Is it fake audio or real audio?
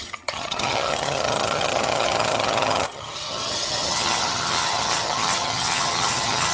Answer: fake